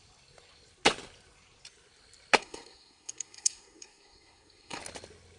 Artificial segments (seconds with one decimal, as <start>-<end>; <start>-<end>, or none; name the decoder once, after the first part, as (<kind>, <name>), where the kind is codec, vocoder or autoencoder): 2.4-4.8 (codec, SNAC)